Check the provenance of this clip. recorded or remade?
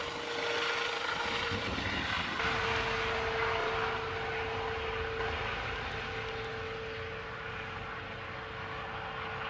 recorded